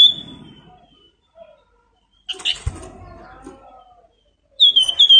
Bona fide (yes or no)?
yes